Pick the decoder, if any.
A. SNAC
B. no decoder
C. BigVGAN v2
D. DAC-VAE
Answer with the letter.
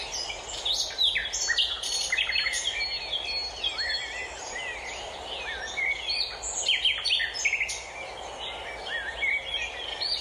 B